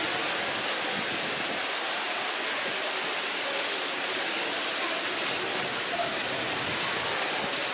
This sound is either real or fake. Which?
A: real